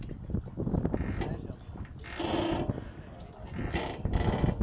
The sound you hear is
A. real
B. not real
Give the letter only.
A